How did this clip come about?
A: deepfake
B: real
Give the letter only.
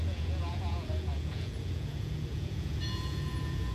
A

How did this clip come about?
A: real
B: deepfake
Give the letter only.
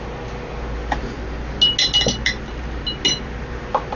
A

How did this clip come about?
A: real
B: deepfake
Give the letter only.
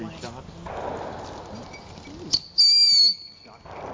A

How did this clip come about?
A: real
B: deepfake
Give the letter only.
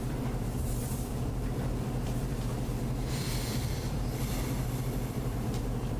B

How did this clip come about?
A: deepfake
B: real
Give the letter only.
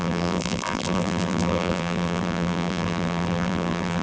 A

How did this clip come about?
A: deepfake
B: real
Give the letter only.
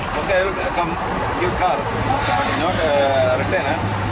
B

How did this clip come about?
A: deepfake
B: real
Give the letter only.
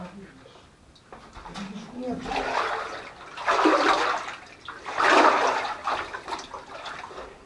B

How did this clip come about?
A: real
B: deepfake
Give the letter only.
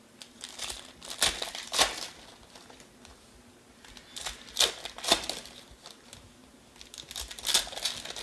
A